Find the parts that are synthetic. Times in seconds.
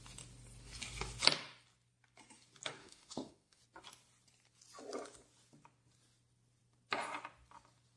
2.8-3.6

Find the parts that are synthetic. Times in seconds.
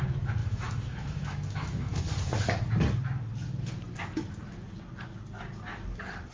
0.4-2.0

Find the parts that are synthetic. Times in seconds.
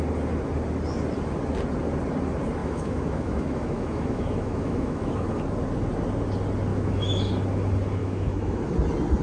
2.6-5.4; 6.7-7.2; 8.0-8.6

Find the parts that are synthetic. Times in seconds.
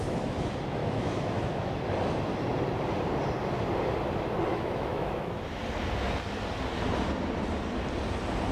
0.8-1.8; 4.5-5.4